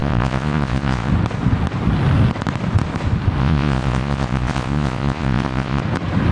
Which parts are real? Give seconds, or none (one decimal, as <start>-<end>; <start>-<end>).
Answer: 1.1-3.4; 5.8-6.3